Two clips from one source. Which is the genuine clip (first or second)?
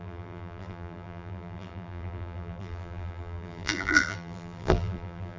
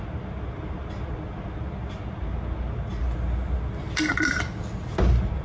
second